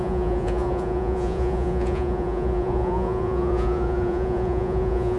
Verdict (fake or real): fake